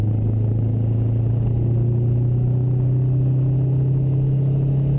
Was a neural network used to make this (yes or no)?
no